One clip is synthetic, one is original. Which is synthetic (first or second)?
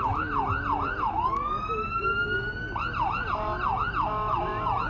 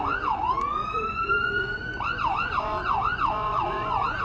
second